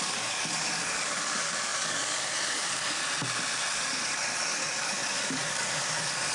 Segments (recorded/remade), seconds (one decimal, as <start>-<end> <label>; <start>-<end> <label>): 0.0-3.0 remade; 3.0-3.7 recorded; 3.7-6.3 remade